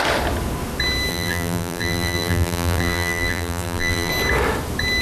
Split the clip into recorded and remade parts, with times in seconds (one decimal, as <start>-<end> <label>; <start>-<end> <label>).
0.0-1.1 recorded; 1.1-4.1 remade; 4.1-5.0 recorded